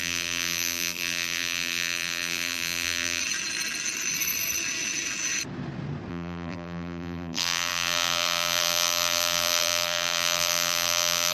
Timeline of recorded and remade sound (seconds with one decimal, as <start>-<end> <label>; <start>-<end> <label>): 0.0-3.2 remade; 3.2-6.1 recorded; 6.1-11.3 remade